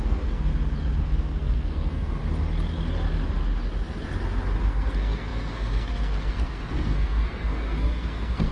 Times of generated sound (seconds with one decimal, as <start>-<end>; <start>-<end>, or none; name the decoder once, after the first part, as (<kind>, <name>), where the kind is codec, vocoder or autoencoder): 0.0-0.5 (codec, SNAC); 1.0-2.2; 4.6-8.5